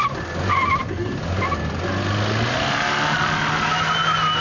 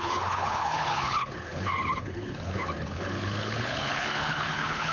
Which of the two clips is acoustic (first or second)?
first